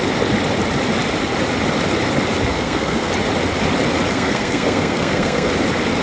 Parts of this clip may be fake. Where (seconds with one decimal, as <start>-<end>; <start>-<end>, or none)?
2.5-3.1; 4.1-5.5